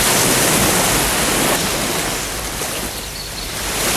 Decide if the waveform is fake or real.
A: real